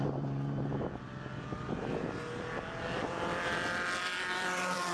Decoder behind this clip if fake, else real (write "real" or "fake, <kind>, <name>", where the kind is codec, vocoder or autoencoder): fake, vocoder, BigVGAN v2